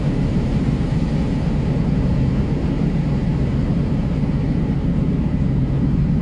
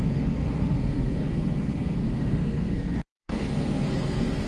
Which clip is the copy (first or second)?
second